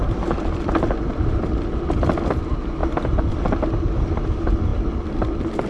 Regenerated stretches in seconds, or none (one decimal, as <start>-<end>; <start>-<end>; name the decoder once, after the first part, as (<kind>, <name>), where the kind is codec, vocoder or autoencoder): none